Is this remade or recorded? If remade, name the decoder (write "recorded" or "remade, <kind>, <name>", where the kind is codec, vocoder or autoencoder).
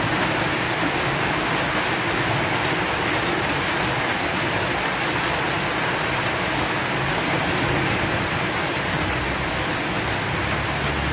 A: recorded